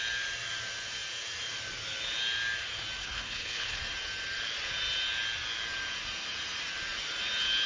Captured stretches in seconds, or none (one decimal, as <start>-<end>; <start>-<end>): 0.0-3.0; 3.8-7.7